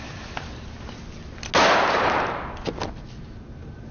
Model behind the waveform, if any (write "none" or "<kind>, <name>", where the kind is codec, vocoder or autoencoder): none